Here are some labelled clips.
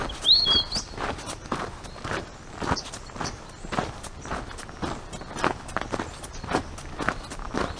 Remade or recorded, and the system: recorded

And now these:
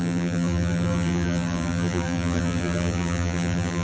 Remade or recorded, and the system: remade, vocoder, BigVGAN v2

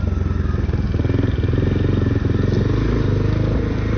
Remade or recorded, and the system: recorded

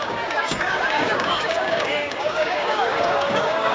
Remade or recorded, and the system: remade, codec, DAC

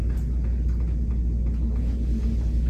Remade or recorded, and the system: recorded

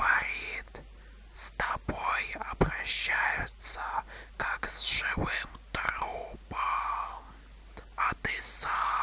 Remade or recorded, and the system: recorded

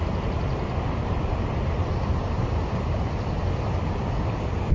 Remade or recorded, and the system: recorded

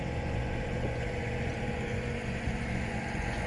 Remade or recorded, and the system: remade, vocoder, Vocos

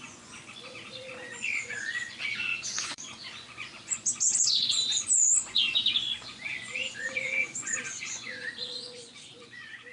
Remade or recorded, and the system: remade, vocoder, Vocos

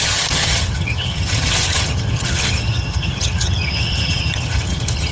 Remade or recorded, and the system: remade, vocoder, HiFi-GAN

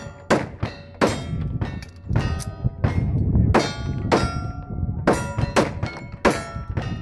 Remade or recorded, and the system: recorded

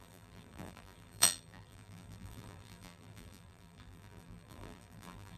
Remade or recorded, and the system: remade, vocoder, BigVGAN v2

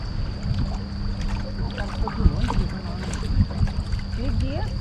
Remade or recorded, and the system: recorded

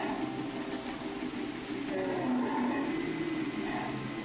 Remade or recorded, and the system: recorded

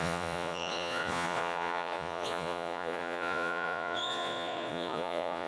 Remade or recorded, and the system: remade, vocoder, Vocos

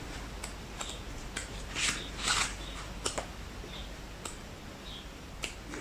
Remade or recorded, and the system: recorded